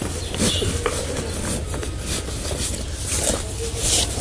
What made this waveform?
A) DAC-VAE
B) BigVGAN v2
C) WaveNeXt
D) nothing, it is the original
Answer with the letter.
D